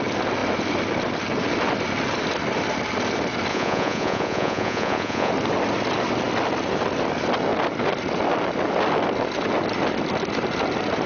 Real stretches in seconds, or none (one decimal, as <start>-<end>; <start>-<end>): 0.0-3.5; 5.3-11.1